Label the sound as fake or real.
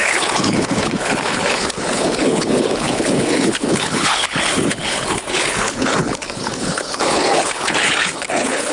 fake